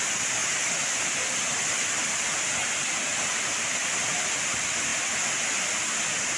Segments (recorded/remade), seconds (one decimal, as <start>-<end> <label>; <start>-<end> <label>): 0.0-6.4 recorded